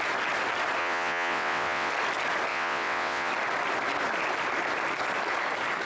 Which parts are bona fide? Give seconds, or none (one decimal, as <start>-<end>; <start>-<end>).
0.0-0.8; 1.9-2.5; 3.3-5.9